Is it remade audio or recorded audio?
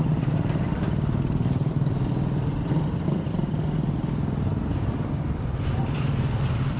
remade